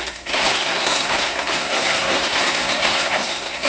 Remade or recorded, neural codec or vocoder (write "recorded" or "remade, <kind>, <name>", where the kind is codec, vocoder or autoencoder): remade, codec, SNAC